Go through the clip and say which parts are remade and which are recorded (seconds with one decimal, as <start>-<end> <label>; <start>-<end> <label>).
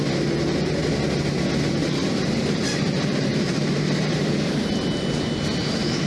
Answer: 0.0-1.8 recorded; 1.8-2.8 remade; 2.8-3.3 recorded; 3.3-4.7 remade; 4.7-6.1 recorded